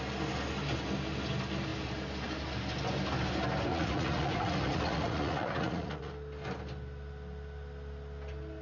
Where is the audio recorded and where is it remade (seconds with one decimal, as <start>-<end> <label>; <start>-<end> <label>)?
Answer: 0.0-3.7 recorded; 3.7-6.1 remade; 6.1-8.6 recorded